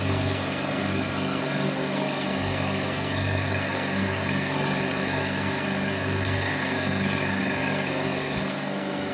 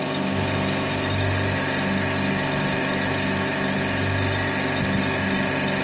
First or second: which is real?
second